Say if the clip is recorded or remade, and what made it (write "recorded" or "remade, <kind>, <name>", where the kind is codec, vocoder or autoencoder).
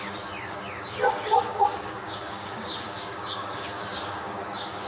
remade, codec, DAC